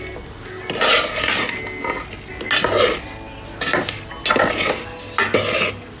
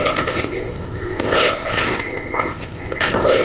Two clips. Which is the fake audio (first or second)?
second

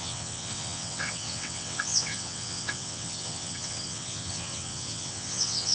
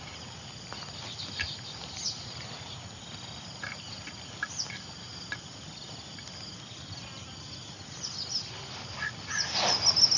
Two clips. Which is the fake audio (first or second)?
first